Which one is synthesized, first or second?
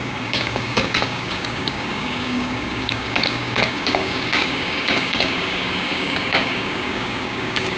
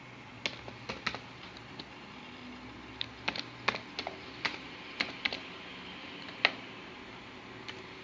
first